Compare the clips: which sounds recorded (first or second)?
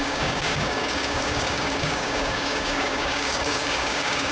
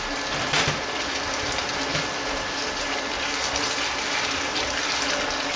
second